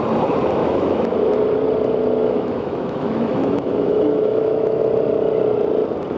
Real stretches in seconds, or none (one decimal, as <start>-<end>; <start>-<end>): 0.0-0.6; 1.3-2.2; 4.8-6.2

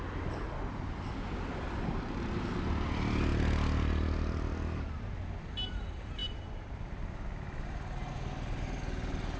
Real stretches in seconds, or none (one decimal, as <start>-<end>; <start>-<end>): 0.0-9.4

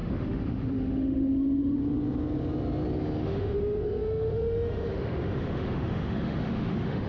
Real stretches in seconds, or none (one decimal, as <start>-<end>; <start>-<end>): 1.8-3.2

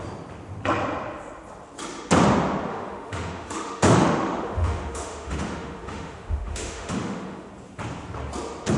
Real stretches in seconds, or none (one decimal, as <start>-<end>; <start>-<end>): 0.0-2.7; 7.5-8.8

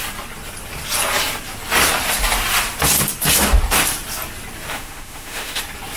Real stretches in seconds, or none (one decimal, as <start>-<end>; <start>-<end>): 0.0-4.7; 5.6-6.0